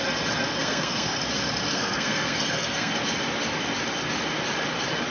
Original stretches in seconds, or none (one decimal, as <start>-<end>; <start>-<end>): 0.0-0.6; 1.2-1.7; 2.9-5.1

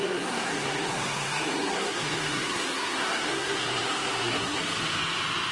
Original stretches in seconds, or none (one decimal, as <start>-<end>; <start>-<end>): 4.6-5.5

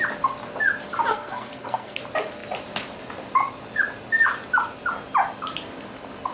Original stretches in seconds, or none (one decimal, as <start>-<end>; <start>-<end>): 0.0-1.1; 2.0-6.3

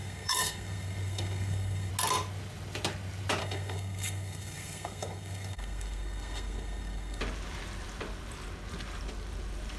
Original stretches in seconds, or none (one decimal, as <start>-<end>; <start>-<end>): 1.9-3.4; 7.2-9.8

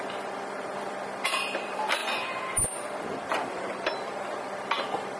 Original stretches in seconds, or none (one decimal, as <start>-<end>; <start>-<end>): 0.0-5.2

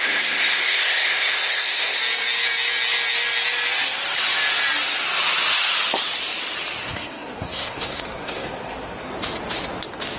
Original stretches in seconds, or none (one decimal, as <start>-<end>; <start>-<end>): 2.0-6.8; 9.1-10.2

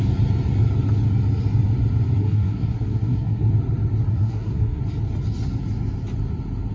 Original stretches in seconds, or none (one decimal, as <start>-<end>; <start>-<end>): 0.0-2.2; 3.5-4.1; 4.8-6.7